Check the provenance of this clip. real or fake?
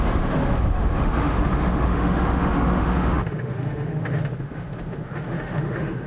fake